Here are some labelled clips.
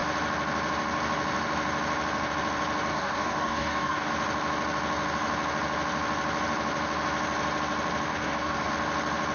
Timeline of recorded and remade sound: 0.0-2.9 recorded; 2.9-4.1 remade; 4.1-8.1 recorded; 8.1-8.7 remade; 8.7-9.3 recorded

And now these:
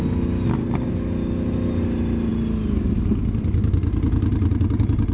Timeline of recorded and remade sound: 0.0-5.1 recorded

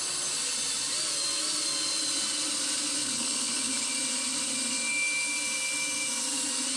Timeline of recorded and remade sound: 0.0-3.0 recorded; 3.0-3.9 remade; 3.9-6.8 recorded

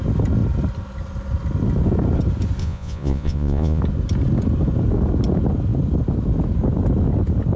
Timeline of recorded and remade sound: 0.0-2.6 recorded; 2.6-3.8 remade; 3.8-7.6 recorded